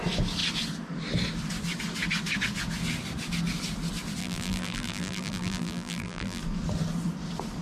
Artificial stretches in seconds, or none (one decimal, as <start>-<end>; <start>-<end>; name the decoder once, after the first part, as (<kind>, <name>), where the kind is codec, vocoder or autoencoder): 4.2-6.4 (vocoder, BigVGAN v2)